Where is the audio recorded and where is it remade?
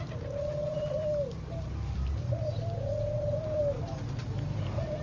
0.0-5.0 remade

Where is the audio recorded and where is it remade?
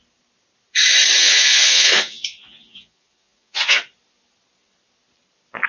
0.0-1.2 recorded; 1.2-3.8 remade; 3.8-5.7 recorded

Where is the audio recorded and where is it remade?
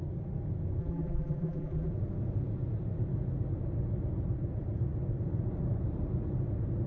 0.0-0.8 recorded; 0.8-1.9 remade; 1.9-6.9 recorded